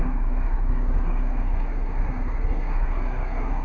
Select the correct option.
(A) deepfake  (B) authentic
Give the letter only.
A